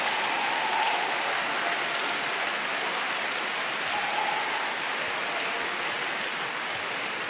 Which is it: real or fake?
real